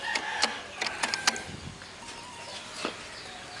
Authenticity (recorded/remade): recorded